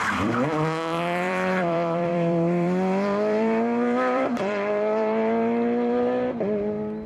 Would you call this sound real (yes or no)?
no